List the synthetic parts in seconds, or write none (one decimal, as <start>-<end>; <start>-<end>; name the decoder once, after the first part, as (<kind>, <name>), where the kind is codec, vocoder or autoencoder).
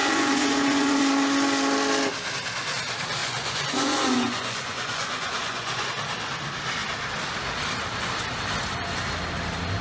0.0-1.0 (vocoder, Vocos); 3.2-5.9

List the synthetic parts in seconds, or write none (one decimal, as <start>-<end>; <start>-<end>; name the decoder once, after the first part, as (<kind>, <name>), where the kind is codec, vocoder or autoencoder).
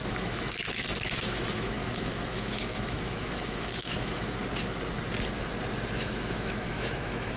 0.0-4.4 (autoencoder, DAC-VAE); 6.0-7.4